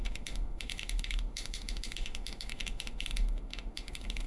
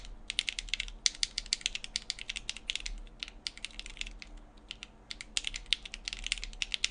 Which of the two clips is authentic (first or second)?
second